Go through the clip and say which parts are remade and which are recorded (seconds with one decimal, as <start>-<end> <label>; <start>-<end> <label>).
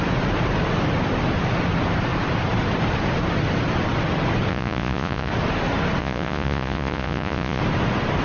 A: 0.0-4.5 recorded; 4.5-5.3 remade; 5.3-6.0 recorded; 6.0-7.6 remade; 7.6-8.2 recorded